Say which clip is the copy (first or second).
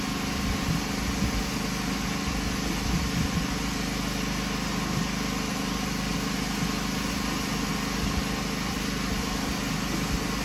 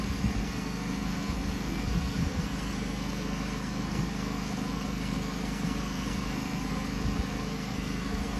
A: second